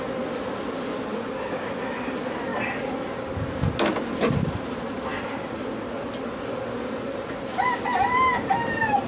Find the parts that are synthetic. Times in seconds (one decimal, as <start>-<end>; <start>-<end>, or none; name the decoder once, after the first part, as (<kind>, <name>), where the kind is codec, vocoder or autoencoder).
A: 1.1-1.8 (codec, DAC)